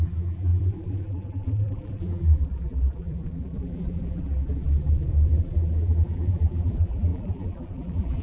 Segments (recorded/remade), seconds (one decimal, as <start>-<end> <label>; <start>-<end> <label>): 0.0-8.2 remade